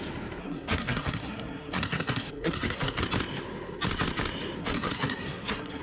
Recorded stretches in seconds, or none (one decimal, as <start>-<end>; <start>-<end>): 0.0-0.4; 3.0-4.6